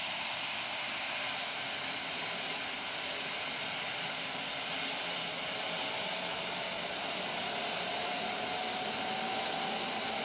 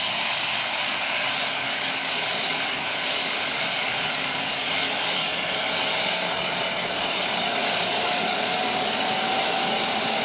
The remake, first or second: second